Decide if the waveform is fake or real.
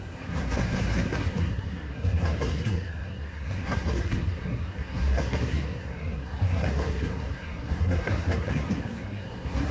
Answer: fake